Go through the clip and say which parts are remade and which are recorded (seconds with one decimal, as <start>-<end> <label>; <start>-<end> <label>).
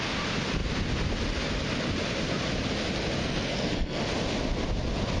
0.0-3.2 recorded; 3.2-4.0 remade; 4.0-5.2 recorded